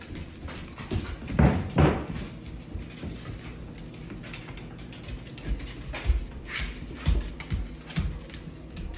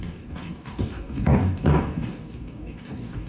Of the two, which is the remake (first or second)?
second